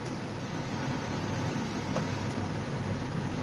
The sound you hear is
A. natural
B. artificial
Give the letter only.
A